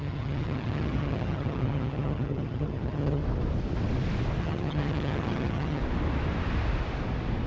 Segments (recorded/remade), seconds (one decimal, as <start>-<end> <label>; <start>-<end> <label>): 0.0-3.2 remade; 3.2-4.4 recorded; 4.4-5.8 remade; 5.8-7.5 recorded

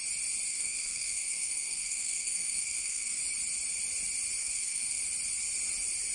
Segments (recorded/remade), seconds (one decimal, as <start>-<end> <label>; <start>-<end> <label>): 0.0-0.5 recorded; 0.5-3.2 remade; 3.2-4.4 recorded; 4.4-5.0 remade; 5.0-6.1 recorded

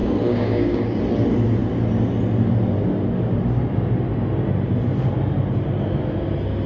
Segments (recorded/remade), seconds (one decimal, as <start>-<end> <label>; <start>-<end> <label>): 0.0-1.0 remade; 1.0-6.7 recorded